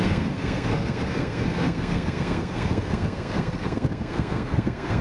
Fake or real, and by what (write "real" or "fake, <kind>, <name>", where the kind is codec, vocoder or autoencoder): fake, codec, SNAC